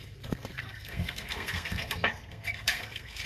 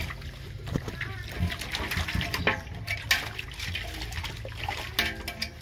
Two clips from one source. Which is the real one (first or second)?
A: second